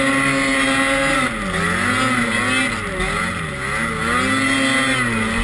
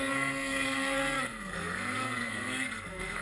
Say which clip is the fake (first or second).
second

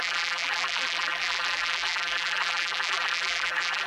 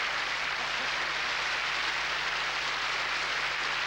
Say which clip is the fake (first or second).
first